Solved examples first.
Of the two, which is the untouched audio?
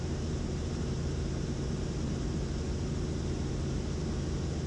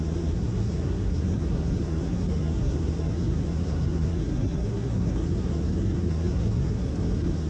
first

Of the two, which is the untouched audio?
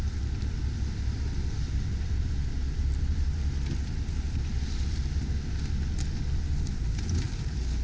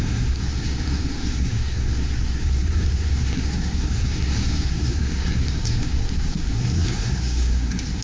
first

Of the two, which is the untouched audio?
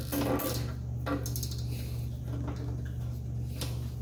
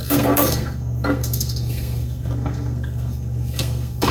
first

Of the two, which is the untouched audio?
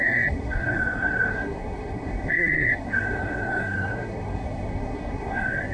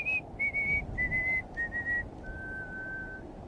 second